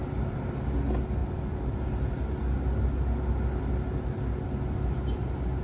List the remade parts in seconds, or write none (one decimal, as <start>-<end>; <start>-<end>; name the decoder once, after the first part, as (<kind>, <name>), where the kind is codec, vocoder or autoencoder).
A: 0.0-0.6 (vocoder, BigVGAN v2); 1.2-1.8